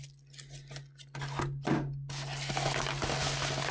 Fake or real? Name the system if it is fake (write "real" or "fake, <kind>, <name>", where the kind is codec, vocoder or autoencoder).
real